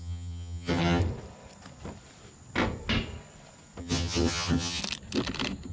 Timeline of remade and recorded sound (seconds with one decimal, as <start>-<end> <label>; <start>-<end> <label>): 0.0-1.0 remade; 1.0-3.8 recorded; 3.8-4.8 remade; 4.8-5.7 recorded